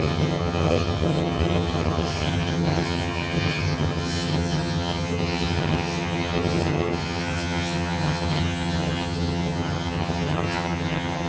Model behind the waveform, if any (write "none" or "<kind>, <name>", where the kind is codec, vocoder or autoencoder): vocoder, HiFi-GAN